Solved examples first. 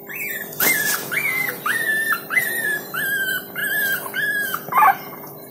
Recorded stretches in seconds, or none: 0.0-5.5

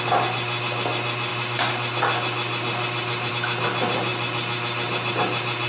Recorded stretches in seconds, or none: 0.0-5.7

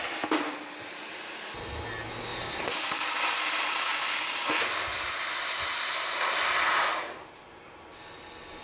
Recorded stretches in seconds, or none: 0.0-2.3; 3.0-6.9; 8.0-8.6